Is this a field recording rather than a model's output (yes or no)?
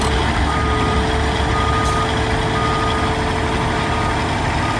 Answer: yes